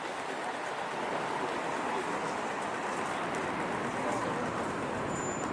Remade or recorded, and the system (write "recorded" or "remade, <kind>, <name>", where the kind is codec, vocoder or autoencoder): recorded